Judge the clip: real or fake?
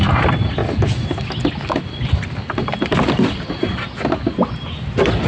real